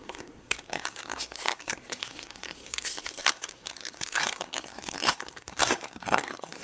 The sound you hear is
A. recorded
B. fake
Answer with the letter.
B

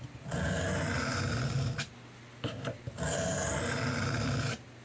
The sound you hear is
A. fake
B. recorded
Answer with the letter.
B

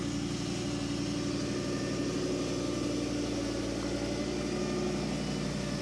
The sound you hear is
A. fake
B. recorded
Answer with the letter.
B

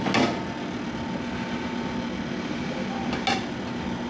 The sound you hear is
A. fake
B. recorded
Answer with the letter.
B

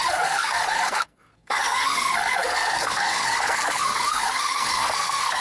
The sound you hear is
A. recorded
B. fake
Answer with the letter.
B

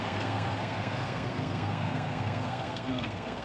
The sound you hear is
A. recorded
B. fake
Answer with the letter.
B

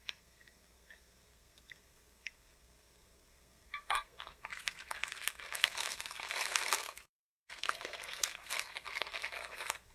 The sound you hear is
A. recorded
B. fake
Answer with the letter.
B